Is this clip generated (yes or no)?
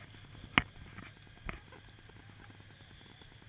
no